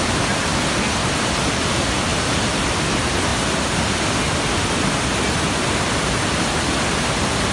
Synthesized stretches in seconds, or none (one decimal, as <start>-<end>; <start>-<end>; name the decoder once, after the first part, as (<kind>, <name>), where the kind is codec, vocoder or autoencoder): none